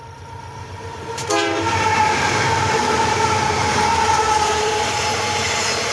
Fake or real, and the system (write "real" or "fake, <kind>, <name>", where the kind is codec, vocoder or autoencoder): fake, vocoder, BigVGAN v2